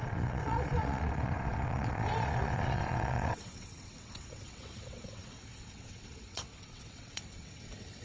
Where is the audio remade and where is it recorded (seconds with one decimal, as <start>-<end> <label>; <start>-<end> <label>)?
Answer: 0.0-8.0 remade